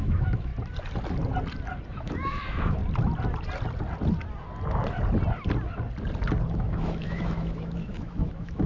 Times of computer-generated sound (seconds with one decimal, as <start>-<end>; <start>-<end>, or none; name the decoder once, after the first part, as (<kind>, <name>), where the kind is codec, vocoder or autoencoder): 0.0-0.5 (autoencoder, DAC-VAE); 1.9-2.8; 6.5-8.7